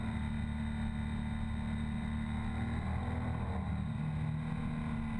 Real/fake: real